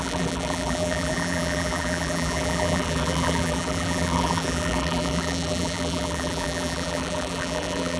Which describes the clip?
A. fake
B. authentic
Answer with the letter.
A